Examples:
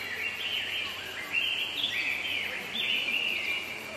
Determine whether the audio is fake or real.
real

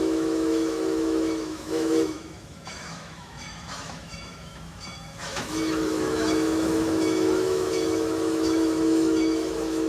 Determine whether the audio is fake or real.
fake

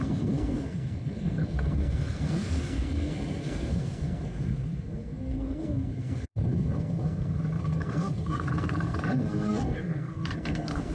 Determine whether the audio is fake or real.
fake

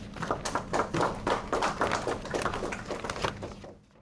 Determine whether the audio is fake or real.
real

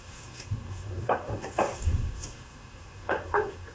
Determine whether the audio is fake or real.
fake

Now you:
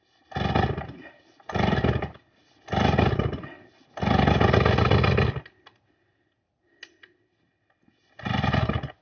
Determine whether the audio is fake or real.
real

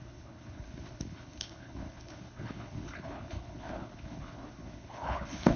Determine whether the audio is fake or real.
fake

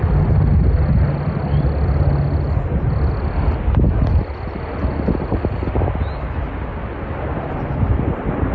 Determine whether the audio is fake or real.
real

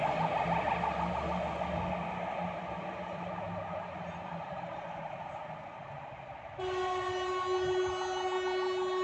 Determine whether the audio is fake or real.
real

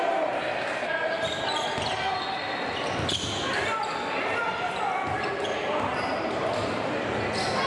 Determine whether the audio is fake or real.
real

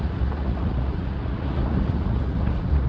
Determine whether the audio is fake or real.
fake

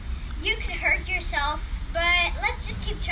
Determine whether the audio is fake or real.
real